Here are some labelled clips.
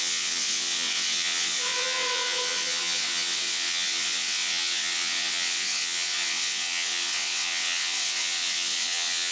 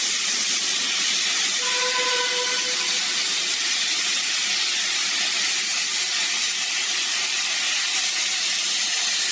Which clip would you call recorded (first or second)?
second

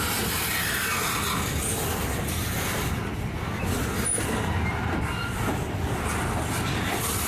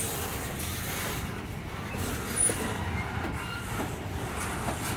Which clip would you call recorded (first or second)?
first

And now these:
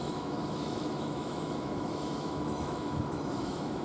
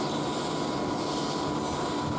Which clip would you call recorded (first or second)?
second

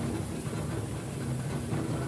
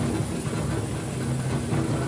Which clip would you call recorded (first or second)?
second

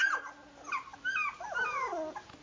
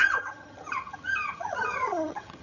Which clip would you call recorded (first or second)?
first